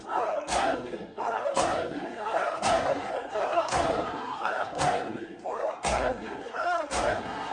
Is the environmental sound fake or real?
fake